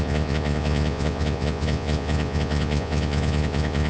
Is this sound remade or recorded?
remade